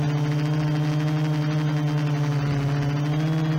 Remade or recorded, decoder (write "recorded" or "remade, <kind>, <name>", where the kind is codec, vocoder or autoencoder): recorded